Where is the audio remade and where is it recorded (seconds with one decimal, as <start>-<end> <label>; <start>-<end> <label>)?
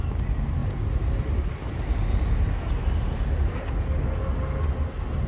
0.0-5.3 recorded